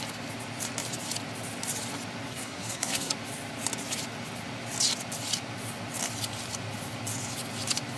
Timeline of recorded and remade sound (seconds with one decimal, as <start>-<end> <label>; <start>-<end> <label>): 0.0-2.3 recorded; 2.3-3.1 remade; 3.1-8.0 recorded